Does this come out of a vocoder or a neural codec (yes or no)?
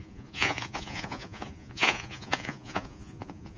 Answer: yes